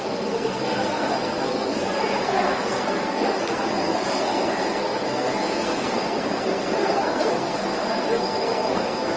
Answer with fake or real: fake